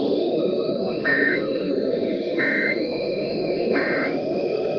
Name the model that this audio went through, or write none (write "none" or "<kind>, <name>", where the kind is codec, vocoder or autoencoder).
autoencoder, DAC-VAE